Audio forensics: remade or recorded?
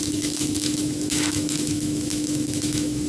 remade